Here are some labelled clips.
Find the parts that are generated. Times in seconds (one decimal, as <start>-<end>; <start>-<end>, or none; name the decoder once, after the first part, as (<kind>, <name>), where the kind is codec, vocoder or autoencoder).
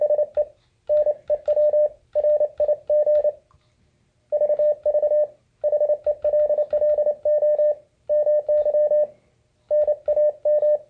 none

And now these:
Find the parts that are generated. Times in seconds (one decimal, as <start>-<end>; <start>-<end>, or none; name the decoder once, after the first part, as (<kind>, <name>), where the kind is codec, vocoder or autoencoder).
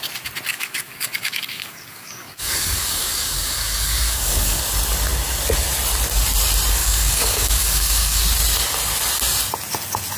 0.5-4.6 (codec, DAC); 6.8-8.2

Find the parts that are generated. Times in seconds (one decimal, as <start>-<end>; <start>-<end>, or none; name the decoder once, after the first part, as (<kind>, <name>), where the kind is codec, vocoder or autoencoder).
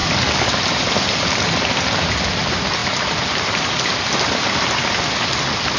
0.0-0.5 (codec, DAC)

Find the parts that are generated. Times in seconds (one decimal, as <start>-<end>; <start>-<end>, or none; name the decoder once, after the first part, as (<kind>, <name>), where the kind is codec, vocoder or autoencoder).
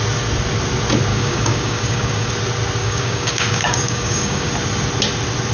1.1-2.3 (codec, DAC); 2.8-4.5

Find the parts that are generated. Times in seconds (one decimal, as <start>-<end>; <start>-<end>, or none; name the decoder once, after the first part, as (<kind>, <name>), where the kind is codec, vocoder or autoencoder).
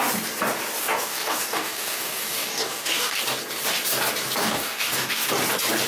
0.8-3.2 (codec, DAC); 4.4-5.3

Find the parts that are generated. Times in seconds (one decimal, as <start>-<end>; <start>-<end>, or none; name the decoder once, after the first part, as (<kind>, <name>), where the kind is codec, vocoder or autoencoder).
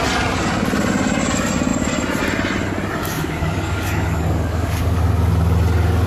3.0-5.0 (codec, DAC)